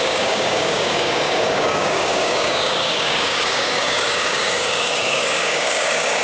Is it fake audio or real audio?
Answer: fake